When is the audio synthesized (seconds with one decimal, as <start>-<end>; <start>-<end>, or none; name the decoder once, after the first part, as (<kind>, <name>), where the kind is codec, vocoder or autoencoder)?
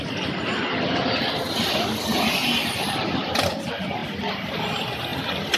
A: none